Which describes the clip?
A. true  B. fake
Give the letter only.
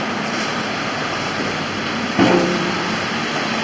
A